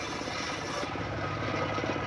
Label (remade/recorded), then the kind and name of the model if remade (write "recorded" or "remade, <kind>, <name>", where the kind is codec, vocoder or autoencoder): recorded